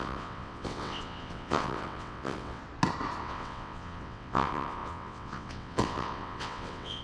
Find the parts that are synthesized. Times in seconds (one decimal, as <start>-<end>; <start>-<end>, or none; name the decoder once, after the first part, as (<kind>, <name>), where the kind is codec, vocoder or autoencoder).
0.0-2.6 (vocoder, WaveNeXt); 3.2-7.0